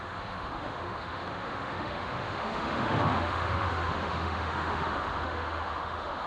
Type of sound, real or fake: fake